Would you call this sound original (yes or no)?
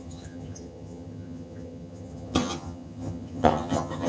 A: no